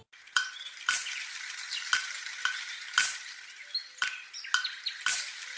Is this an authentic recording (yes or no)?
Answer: yes